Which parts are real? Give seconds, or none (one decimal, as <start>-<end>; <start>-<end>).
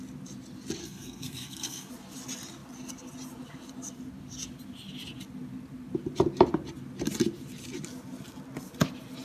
0.0-0.8; 1.9-9.2